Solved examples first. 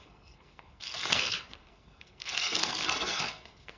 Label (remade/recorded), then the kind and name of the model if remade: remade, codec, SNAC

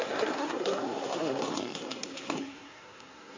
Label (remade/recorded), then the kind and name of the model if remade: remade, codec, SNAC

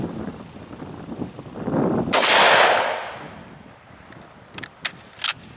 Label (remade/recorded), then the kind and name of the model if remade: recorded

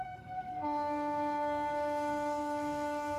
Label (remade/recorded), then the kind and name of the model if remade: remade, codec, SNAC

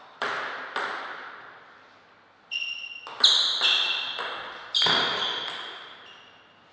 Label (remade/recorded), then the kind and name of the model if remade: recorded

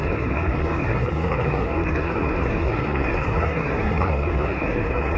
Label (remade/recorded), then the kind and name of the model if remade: remade, codec, SNAC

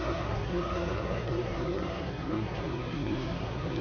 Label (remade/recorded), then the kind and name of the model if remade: remade, codec, SNAC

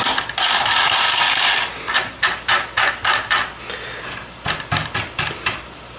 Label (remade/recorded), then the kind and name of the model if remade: recorded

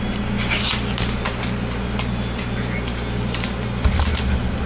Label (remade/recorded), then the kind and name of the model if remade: recorded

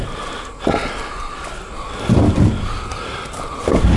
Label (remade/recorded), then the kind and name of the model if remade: recorded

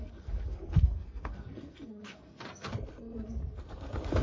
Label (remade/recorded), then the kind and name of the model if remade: remade, codec, SNAC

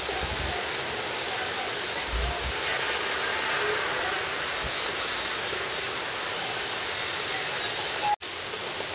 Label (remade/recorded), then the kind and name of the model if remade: recorded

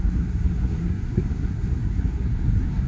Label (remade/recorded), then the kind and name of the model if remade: remade, codec, SNAC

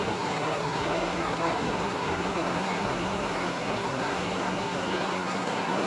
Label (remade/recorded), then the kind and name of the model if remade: remade, codec, SNAC